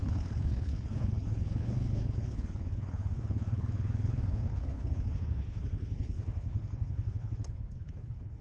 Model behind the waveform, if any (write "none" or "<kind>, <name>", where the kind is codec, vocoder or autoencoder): codec, HILCodec